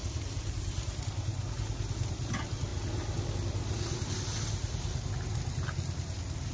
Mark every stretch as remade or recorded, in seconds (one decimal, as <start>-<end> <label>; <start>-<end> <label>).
0.0-1.0 remade; 1.0-6.5 recorded